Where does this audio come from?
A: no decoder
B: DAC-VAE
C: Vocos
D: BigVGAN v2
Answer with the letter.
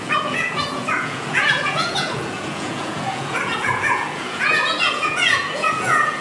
C